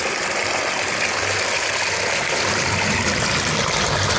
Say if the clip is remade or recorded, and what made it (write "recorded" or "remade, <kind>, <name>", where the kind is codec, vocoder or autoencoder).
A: recorded